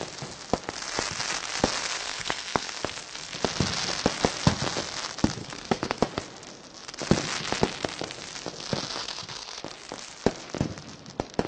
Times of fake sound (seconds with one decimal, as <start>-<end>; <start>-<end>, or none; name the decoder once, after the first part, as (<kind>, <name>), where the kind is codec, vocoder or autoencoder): 1.8-2.8 (codec, SNAC); 5.4-6.0; 9.0-9.6

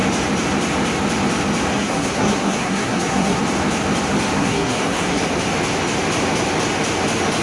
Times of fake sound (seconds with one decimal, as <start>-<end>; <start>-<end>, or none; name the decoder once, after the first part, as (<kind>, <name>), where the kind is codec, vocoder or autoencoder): 1.7-3.4 (codec, SNAC); 4.4-5.2

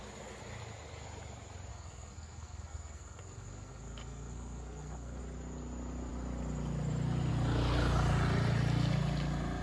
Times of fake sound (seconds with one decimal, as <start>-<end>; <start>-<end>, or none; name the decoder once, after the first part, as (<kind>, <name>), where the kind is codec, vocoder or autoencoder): 1.7-5.2 (codec, SNAC)

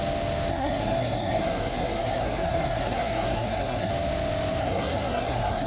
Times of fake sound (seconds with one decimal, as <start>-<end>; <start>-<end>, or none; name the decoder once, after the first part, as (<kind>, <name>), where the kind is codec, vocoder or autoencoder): 0.5-3.9 (codec, SNAC); 4.6-5.7